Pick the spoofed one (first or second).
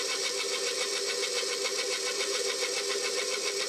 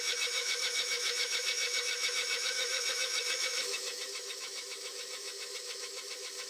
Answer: second